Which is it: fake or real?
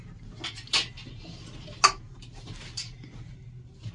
real